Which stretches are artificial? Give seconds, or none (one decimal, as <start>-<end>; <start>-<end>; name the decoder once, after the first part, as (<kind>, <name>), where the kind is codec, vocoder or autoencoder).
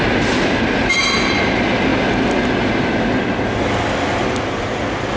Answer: none